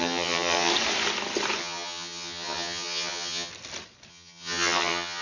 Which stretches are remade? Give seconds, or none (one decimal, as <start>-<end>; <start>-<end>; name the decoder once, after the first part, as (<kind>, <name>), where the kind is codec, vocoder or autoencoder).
0.0-0.7 (vocoder, HiFi-GAN); 1.6-3.5; 4.1-5.2